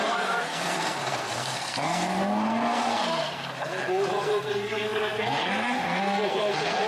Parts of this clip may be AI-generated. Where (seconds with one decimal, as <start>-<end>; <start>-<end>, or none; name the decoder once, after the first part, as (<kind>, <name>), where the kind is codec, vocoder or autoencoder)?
0.0-6.9 (codec, SNAC)